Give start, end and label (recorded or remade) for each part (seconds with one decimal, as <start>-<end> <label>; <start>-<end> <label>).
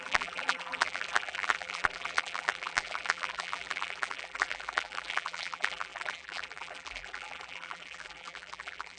0.0-9.0 remade